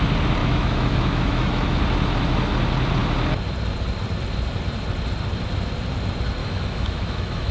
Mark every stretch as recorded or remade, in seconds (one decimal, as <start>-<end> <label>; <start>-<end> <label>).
0.0-0.4 recorded; 0.4-1.8 remade; 1.8-6.4 recorded; 6.4-7.5 remade